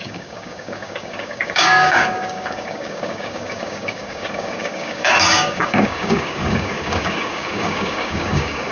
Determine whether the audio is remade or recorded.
remade